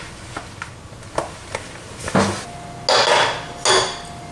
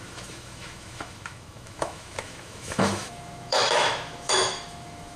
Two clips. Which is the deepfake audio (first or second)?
second